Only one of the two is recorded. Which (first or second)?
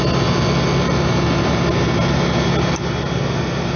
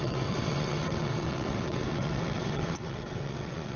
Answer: first